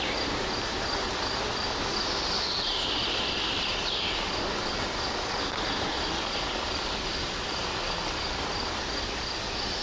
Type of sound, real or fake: real